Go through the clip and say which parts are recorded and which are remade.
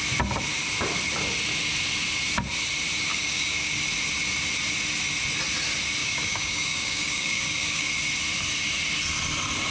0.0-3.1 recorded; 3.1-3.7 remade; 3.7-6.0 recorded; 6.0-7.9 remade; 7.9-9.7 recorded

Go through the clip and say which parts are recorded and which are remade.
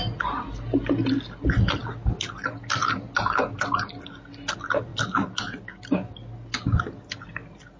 0.0-7.8 recorded